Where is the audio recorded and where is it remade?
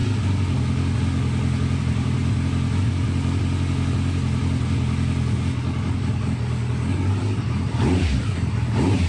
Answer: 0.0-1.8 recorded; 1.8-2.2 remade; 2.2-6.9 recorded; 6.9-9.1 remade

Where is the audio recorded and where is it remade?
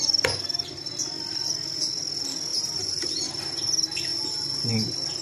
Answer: 0.0-2.5 recorded; 2.5-3.1 remade; 3.1-4.1 recorded; 4.1-4.7 remade; 4.7-5.2 recorded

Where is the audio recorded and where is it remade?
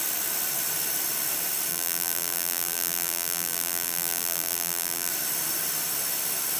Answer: 0.0-1.7 recorded; 1.7-5.1 remade; 5.1-6.6 recorded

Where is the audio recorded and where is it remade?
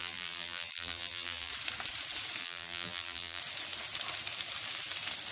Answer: 0.0-1.5 remade; 1.5-2.4 recorded; 2.4-3.4 remade; 3.4-5.3 recorded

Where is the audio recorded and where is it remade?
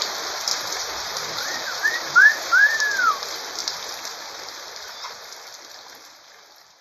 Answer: 0.0-0.5 recorded; 0.5-3.1 remade; 3.1-6.8 recorded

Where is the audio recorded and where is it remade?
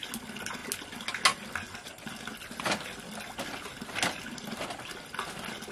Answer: 0.0-5.7 recorded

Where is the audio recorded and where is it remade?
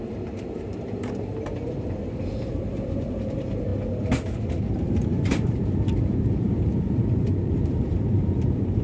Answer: 0.0-8.8 remade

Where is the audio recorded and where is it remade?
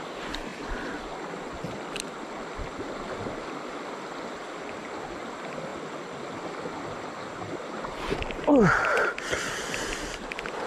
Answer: 0.0-10.7 recorded